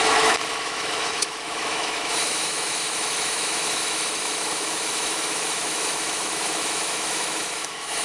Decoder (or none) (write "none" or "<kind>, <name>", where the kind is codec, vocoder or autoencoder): autoencoder, DAC-VAE